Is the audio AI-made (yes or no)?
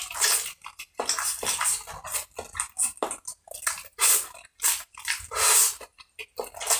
no